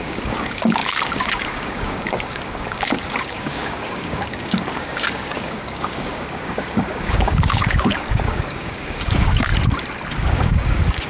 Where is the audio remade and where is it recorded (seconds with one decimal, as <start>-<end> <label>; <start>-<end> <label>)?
0.0-9.5 remade; 9.5-10.1 recorded; 10.1-11.1 remade

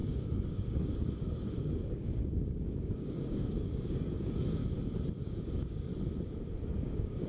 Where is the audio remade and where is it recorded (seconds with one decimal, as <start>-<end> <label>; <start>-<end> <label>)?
0.0-4.6 remade; 4.6-5.2 recorded; 5.2-5.9 remade; 5.9-6.8 recorded; 6.8-7.3 remade

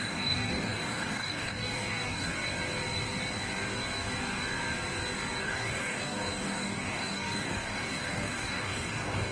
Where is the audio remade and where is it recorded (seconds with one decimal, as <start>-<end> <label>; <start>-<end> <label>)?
0.0-2.3 remade; 2.3-5.4 recorded; 5.4-9.3 remade

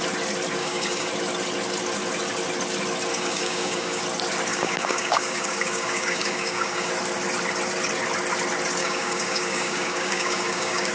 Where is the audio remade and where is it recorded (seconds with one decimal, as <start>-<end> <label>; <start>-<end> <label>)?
0.0-0.6 recorded; 0.6-1.1 remade; 1.1-3.1 recorded; 3.1-4.0 remade; 4.0-4.5 recorded; 4.5-6.9 remade; 6.9-8.8 recorded; 8.8-10.9 remade

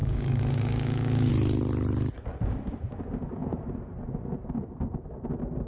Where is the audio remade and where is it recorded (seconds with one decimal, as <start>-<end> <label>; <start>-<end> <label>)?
0.0-1.3 remade; 1.3-5.7 recorded